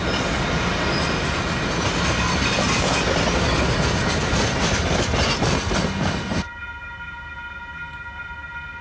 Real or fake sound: real